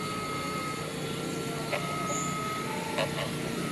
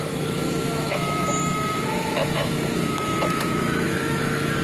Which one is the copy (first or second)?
second